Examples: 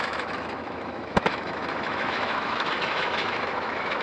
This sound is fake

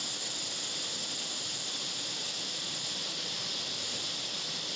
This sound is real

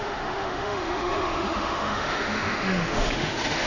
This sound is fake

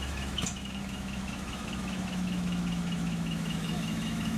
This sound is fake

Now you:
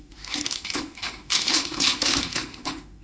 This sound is fake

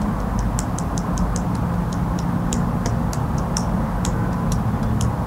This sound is real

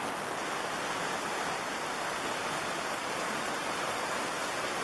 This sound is real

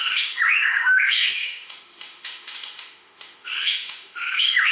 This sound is fake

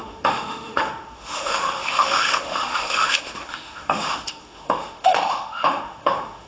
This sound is fake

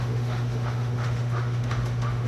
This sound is fake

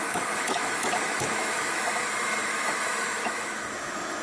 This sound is fake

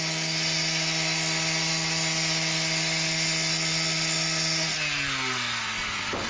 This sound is real